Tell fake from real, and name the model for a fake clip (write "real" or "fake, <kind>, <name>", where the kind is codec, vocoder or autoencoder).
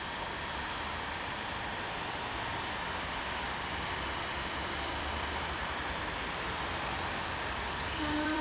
fake, vocoder, BigVGAN v2